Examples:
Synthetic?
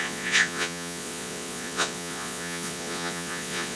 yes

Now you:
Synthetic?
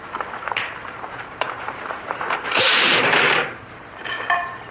yes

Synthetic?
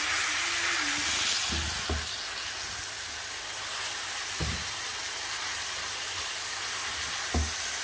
no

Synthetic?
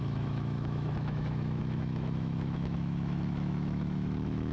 yes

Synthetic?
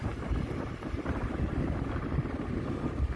no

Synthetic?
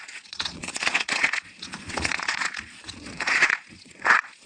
yes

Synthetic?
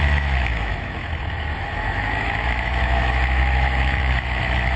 yes